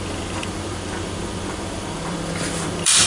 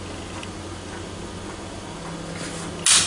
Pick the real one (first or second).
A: second